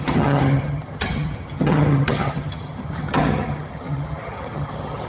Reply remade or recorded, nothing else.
remade